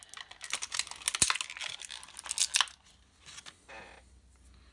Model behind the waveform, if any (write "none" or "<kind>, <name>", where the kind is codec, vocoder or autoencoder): none